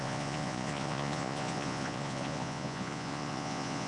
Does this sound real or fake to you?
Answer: fake